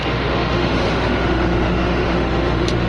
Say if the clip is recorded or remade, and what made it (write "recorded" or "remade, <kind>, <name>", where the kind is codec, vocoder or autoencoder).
remade, autoencoder, DAC-VAE